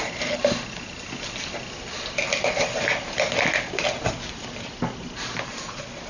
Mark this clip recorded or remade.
recorded